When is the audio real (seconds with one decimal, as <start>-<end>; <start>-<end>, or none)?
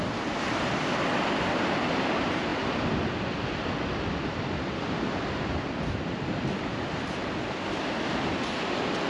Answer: 0.0-2.5; 6.7-9.1